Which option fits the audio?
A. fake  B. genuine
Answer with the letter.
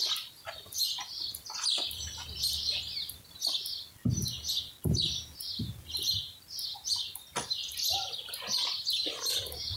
B